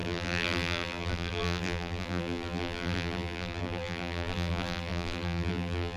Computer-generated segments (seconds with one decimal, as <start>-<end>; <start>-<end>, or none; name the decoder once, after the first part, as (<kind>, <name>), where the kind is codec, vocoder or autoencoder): 0.0-6.0 (vocoder, BigVGAN v2)